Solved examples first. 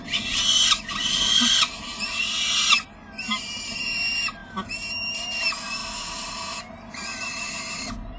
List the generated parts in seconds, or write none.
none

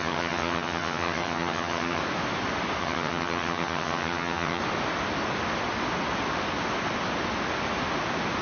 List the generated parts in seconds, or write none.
0.0-2.0 (vocoder, HiFi-GAN); 2.8-4.6

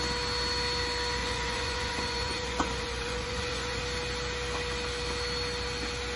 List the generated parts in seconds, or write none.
1.2-3.8 (vocoder, Vocos)